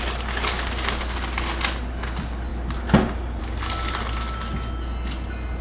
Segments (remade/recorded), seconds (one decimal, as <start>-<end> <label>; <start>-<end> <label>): 0.0-5.6 recorded